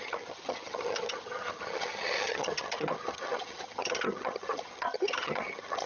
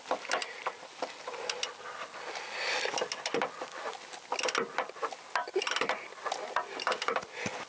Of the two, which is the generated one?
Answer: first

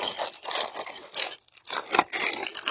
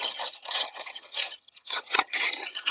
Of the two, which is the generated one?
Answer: second